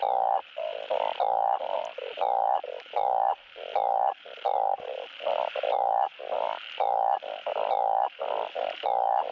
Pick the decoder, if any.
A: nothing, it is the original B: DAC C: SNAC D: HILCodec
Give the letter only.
A